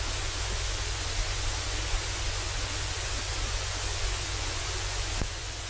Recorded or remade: remade